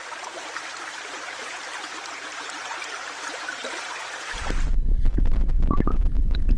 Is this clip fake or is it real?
fake